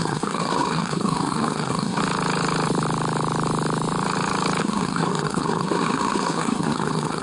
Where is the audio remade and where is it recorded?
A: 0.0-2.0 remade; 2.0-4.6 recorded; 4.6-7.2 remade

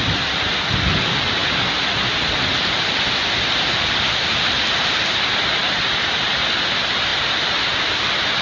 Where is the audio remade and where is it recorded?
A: 0.0-7.1 recorded; 7.1-8.0 remade; 8.0-8.4 recorded